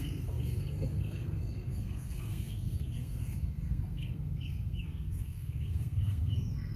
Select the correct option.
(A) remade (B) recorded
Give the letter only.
A